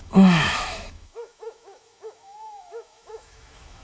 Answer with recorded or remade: remade